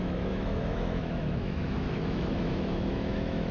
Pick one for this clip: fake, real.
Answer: fake